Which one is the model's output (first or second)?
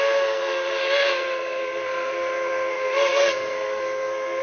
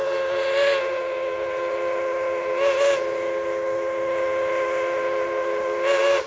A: first